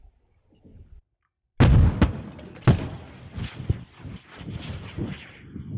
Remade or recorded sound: recorded